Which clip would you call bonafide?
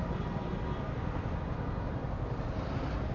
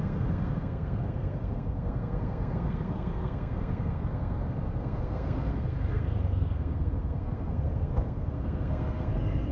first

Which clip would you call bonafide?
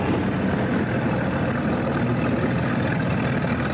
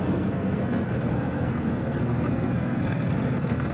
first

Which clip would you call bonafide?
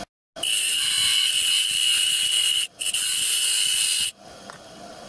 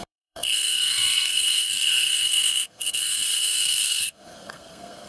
first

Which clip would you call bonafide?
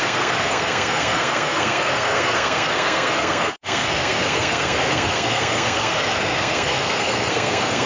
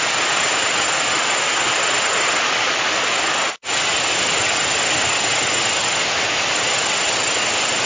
second